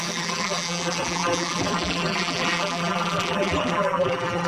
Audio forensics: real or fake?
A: fake